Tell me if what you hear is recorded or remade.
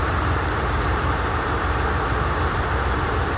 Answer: remade